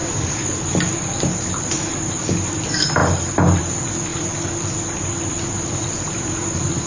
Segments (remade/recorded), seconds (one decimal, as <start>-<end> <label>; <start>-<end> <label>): 0.0-0.6 remade; 0.6-6.9 recorded

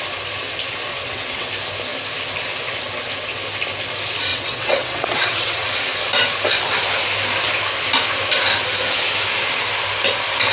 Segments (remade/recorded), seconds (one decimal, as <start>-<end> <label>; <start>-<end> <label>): 0.0-0.9 recorded; 0.9-1.5 remade; 1.5-4.3 recorded; 4.3-5.7 remade; 5.7-10.5 recorded